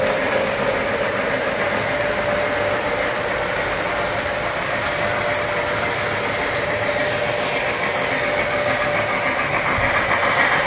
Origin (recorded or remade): recorded